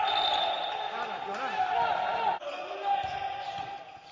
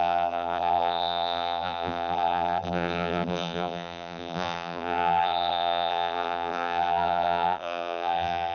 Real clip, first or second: first